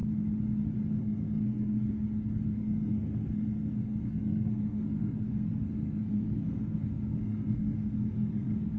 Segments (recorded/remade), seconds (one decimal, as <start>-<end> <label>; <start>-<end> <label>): 0.0-0.9 recorded; 0.9-8.8 remade